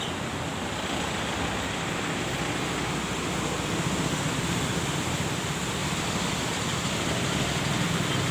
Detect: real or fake real